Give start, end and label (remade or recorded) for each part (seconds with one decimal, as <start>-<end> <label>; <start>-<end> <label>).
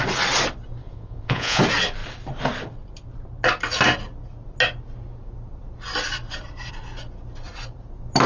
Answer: 0.0-0.8 recorded; 0.8-1.6 remade; 1.6-8.3 recorded